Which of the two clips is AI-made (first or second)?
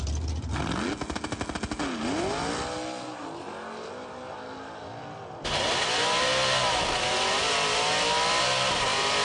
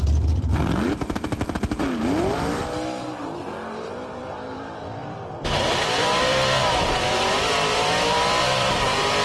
second